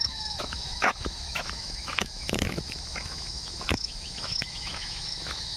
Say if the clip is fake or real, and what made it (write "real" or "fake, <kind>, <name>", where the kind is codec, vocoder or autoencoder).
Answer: fake, autoencoder, DAC-VAE